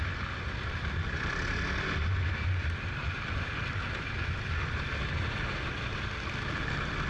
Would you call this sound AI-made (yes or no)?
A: no